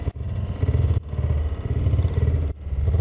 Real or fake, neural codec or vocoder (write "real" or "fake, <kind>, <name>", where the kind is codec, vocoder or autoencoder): real